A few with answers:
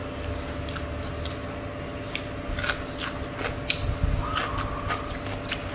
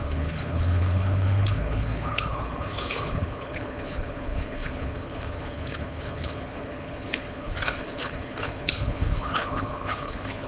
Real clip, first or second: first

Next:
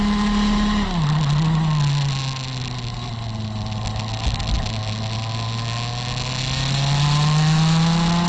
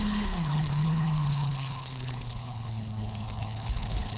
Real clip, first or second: first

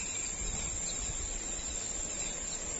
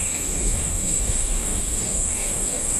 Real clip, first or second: first